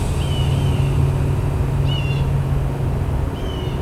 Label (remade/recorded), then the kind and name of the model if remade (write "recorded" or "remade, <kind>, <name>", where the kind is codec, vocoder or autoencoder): recorded